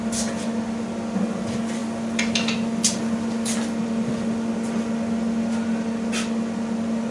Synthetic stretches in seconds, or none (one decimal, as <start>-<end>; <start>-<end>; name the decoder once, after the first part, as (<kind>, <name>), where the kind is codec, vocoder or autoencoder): none